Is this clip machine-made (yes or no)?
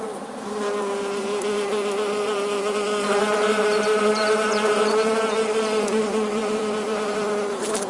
yes